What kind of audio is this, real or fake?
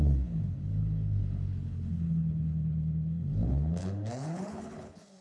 fake